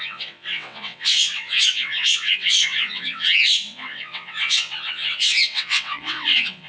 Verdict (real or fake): fake